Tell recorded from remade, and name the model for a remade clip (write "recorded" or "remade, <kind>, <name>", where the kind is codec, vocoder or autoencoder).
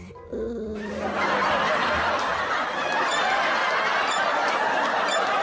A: recorded